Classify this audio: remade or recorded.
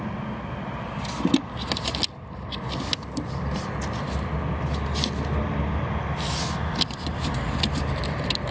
recorded